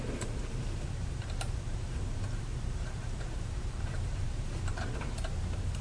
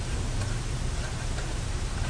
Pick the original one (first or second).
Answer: second